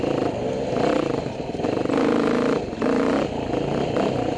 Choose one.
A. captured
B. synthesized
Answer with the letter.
A